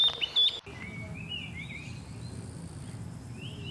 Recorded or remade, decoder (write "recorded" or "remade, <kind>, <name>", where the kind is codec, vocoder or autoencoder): recorded